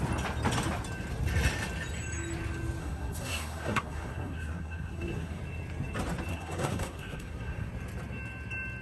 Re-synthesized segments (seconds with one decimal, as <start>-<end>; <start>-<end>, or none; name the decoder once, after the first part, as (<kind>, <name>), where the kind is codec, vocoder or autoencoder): 2.8-5.4 (codec, SNAC); 6.3-7.7